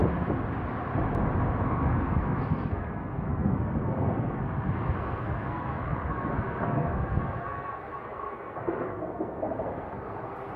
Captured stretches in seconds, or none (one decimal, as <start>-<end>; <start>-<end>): 0.0-1.6